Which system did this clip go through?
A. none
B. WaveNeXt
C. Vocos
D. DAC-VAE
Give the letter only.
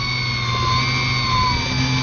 A